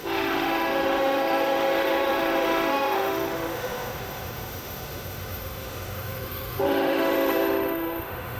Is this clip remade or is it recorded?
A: remade